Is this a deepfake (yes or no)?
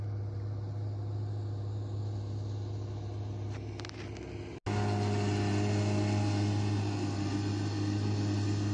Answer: no